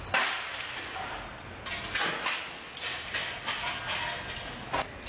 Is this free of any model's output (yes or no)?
yes